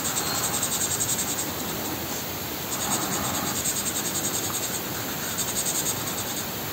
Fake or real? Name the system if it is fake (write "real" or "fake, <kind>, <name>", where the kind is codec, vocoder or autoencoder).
real